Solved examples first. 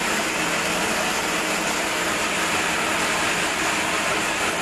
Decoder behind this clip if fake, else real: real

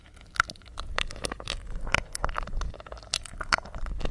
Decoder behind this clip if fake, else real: real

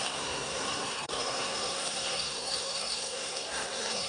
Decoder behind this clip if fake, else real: fake, codec, SNAC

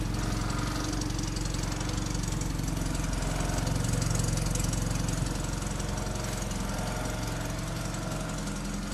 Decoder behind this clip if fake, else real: real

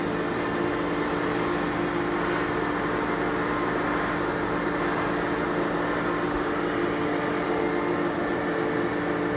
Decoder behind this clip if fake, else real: real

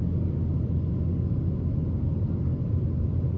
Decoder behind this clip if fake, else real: real